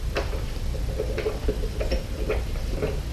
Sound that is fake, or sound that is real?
real